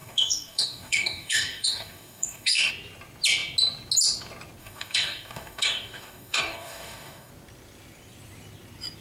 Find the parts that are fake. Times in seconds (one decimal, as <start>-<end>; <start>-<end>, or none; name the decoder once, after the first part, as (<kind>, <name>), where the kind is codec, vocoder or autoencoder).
0.0-2.7 (codec, DAC); 4.6-7.3